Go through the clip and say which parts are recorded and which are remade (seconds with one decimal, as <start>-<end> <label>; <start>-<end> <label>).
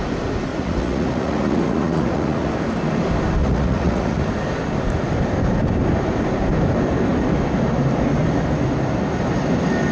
0.0-0.5 recorded; 0.5-2.5 remade; 2.5-3.4 recorded; 3.4-4.2 remade; 4.2-9.9 recorded